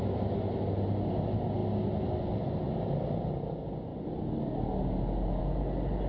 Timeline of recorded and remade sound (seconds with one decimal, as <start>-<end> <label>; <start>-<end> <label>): 0.0-6.1 recorded